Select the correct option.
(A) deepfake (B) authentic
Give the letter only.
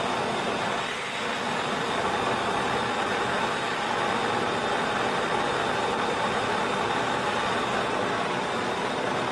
B